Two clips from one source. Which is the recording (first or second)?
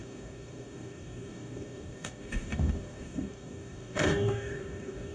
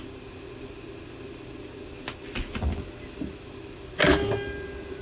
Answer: second